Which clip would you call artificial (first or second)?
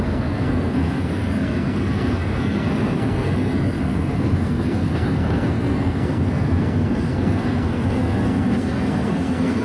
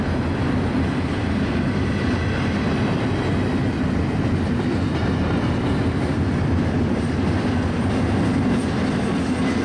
first